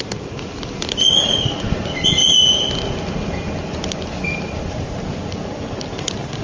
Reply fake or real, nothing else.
real